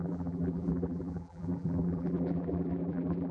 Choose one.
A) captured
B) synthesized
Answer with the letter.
B